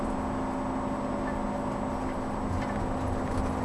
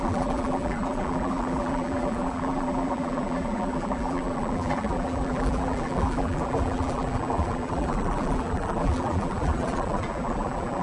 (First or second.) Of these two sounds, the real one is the first